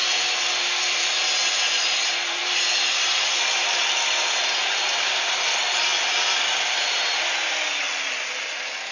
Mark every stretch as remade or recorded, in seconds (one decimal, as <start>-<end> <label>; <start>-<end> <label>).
0.0-8.9 remade